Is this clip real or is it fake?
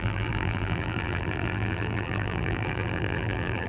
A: fake